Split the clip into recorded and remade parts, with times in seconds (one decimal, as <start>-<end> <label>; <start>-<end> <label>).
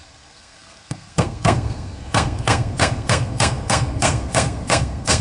0.0-5.2 remade